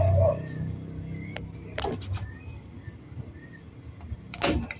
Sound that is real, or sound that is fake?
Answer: real